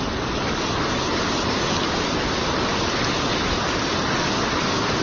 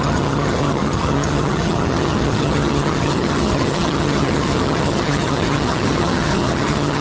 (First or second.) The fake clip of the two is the second